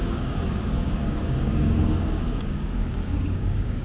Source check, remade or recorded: remade